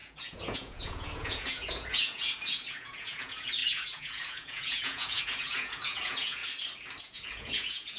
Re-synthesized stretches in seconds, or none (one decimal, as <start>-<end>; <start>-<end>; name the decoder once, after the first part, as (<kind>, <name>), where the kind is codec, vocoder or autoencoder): 0.0-6.4 (vocoder, Vocos); 7.0-8.0